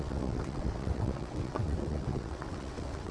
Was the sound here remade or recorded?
remade